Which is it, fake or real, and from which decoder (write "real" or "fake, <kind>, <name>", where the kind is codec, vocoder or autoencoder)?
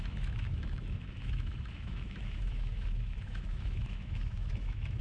fake, autoencoder, DAC-VAE